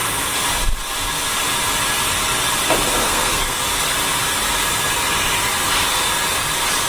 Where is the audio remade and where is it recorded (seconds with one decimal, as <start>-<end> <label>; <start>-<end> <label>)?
0.0-3.0 recorded; 3.0-3.6 remade; 3.6-6.9 recorded